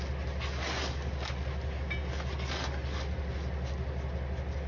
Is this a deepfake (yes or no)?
no